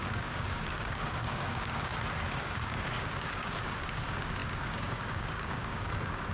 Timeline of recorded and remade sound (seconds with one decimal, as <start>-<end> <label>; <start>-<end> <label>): 0.0-1.9 remade; 1.9-2.4 recorded; 2.4-6.3 remade